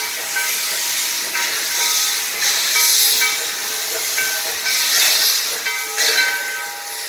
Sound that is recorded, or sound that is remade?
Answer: recorded